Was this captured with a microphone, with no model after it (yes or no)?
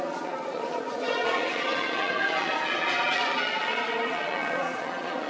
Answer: no